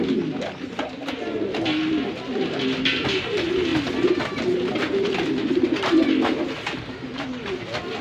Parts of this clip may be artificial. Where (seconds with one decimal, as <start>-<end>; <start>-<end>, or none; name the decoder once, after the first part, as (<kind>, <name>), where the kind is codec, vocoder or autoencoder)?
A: none